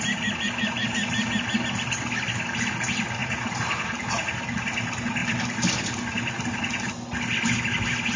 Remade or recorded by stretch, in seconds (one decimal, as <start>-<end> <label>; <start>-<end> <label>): 0.0-8.2 recorded